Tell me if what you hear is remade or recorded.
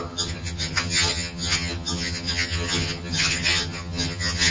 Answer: remade